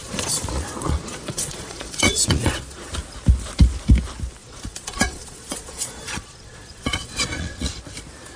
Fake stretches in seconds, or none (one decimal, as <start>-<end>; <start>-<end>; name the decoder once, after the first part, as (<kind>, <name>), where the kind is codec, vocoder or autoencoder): 0.0-2.9 (vocoder, Vocos); 4.4-7.8